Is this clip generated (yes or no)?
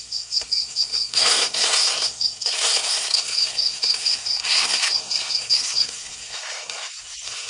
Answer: yes